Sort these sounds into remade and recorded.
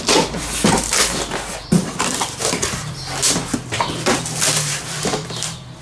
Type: remade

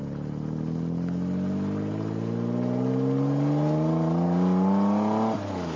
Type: recorded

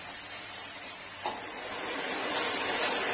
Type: remade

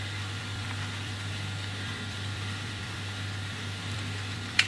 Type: remade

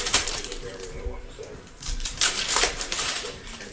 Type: remade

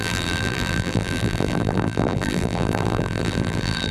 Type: remade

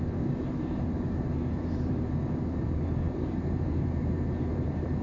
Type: remade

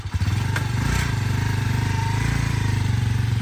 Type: remade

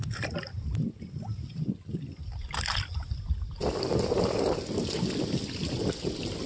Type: recorded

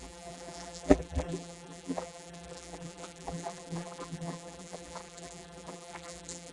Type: remade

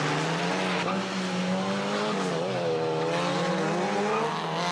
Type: recorded